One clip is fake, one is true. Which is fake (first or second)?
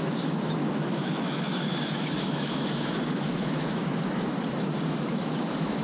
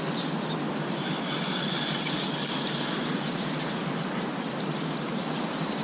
first